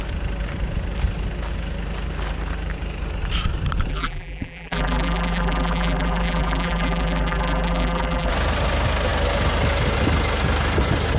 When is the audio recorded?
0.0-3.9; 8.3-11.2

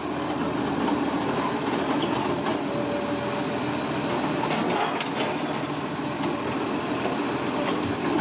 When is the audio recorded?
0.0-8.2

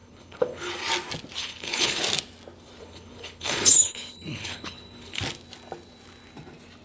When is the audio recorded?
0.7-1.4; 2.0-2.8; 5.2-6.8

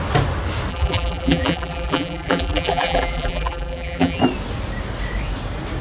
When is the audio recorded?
0.0-0.7; 4.2-5.8

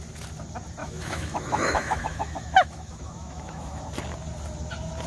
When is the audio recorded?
0.0-0.8; 3.8-5.1

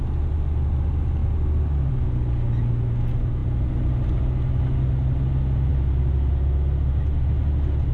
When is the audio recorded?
0.0-7.9

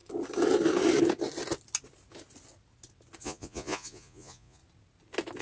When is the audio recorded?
0.0-3.2; 4.6-5.4

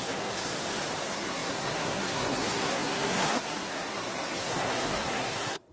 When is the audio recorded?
0.5-1.0